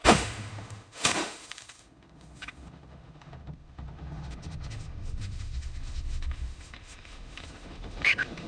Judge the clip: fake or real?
fake